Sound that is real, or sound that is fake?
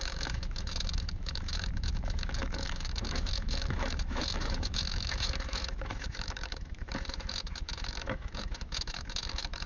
fake